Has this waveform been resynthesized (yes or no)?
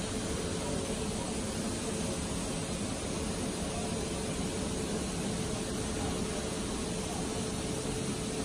no